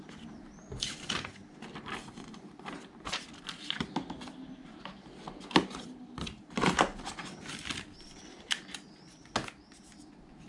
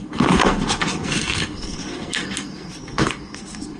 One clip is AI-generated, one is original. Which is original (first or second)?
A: first